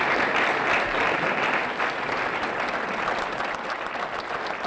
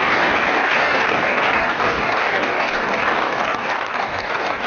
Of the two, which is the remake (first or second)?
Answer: second